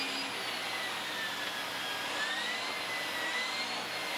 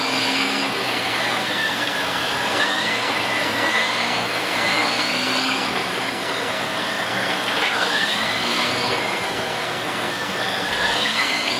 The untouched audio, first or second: first